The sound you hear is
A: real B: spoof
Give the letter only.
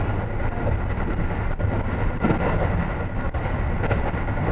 A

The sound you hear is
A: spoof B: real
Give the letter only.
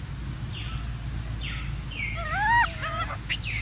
B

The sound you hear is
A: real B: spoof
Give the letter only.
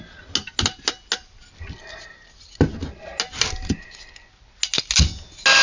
A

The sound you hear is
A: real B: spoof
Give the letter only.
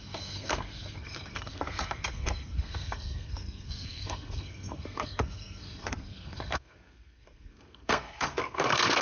B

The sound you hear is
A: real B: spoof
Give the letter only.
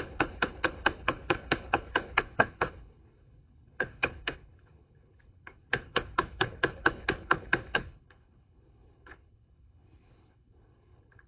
B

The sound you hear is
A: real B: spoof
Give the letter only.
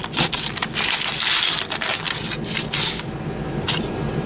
A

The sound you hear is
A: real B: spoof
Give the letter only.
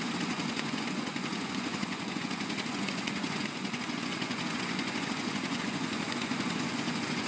B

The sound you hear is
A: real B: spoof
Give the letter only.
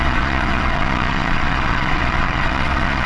B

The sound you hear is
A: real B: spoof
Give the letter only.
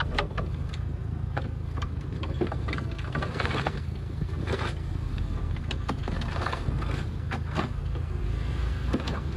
B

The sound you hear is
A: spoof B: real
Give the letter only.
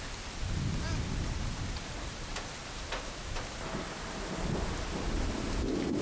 B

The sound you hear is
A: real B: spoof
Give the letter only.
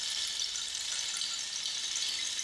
A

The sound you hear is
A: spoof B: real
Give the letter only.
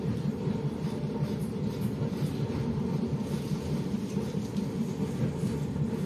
B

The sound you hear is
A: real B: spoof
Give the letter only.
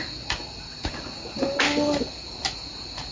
A